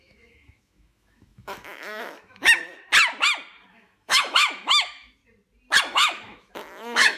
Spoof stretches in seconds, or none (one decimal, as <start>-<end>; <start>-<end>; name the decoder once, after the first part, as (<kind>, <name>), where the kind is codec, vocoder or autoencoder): 0.0-2.6 (autoencoder, DAC-VAE); 3.7-5.2; 5.8-7.2